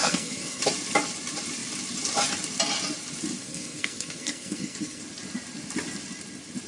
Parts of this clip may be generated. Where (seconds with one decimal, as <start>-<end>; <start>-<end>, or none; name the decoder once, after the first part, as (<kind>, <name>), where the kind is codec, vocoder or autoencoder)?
0.0-0.6 (codec, SNAC); 3.4-5.0